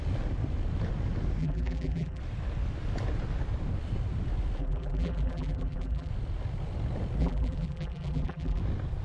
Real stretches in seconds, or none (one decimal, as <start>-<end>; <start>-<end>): 0.0-1.4; 2.2-4.6; 6.1-7.2; 8.6-9.0